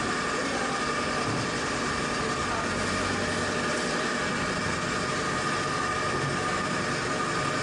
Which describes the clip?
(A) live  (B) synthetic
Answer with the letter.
A